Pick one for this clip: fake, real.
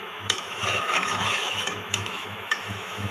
fake